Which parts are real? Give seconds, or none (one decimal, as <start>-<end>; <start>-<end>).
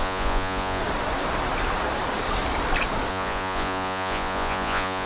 0.8-3.1